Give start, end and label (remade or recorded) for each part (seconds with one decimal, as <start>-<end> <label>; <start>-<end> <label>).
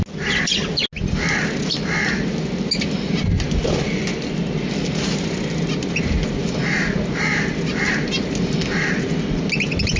0.0-10.0 recorded